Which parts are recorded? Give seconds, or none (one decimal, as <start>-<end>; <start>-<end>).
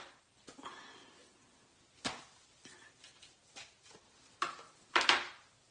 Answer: 0.0-5.7